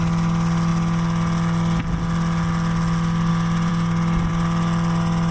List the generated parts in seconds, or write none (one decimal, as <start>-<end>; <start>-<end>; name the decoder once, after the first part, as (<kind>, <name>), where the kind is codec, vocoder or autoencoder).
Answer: none